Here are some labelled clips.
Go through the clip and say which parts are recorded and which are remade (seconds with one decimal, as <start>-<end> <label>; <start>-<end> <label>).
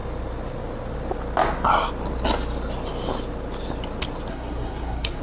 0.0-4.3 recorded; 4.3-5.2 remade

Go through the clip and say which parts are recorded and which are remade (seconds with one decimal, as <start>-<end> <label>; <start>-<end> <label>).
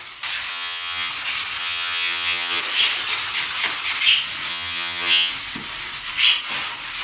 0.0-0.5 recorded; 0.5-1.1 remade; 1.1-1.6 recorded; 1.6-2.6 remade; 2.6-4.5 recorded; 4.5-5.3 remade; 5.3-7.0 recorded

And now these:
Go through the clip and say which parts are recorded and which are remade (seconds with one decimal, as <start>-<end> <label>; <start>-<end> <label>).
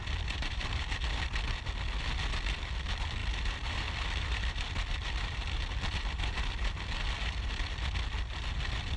0.0-0.8 remade; 0.8-3.2 recorded; 3.2-7.5 remade; 7.5-9.0 recorded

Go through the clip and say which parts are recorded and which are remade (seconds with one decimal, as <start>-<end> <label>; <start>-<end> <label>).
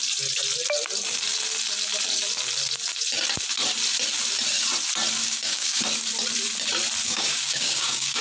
0.0-5.2 recorded; 5.2-5.8 remade; 5.8-7.0 recorded; 7.0-8.2 remade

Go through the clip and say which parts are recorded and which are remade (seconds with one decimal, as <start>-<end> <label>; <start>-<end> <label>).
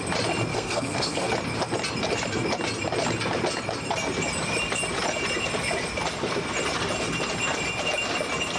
0.0-0.5 recorded; 0.5-1.3 remade; 1.3-8.6 recorded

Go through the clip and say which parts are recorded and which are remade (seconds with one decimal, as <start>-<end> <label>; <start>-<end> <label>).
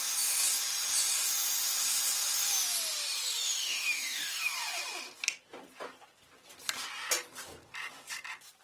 0.0-3.4 recorded; 3.4-4.4 remade; 4.4-8.6 recorded